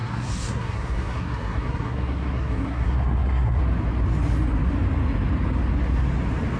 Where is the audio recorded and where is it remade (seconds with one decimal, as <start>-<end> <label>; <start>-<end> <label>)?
0.0-3.6 remade; 3.6-6.6 recorded